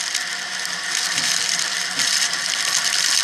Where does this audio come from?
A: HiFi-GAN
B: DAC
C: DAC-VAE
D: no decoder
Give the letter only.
D